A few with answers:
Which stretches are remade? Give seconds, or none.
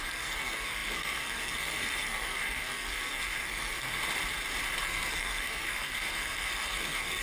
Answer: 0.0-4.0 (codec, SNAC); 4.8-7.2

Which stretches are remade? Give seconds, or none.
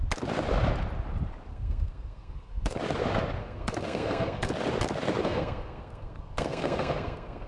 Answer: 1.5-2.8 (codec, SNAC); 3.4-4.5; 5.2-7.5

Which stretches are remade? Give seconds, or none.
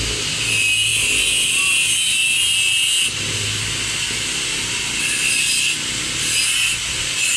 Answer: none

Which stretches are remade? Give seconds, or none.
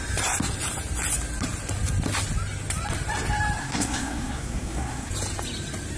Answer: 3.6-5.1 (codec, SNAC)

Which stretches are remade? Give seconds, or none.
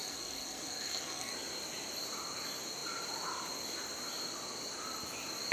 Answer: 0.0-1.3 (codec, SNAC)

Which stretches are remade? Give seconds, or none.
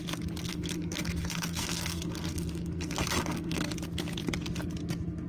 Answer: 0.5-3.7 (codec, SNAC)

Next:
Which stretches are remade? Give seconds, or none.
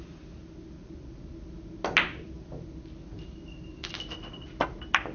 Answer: none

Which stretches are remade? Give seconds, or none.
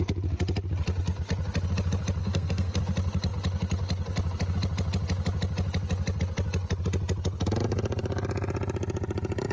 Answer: 2.2-2.8 (codec, SNAC)